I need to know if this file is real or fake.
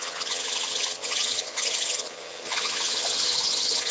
fake